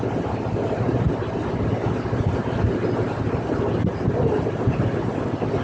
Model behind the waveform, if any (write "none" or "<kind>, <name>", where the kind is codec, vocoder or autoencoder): none